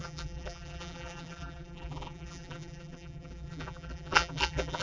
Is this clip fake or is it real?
fake